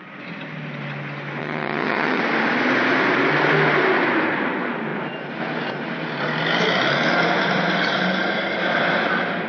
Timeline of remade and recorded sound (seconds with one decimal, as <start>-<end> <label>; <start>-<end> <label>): 0.0-1.4 recorded; 1.4-2.2 remade; 2.2-9.5 recorded